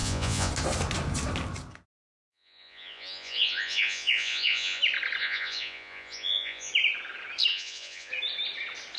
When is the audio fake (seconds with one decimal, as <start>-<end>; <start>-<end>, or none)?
0.0-0.5; 1.9-4.8; 5.2-6.7; 7.5-8.1